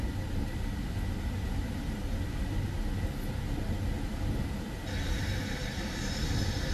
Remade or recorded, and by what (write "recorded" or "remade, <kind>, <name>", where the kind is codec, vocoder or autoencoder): recorded